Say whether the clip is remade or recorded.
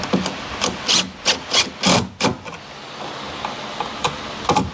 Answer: recorded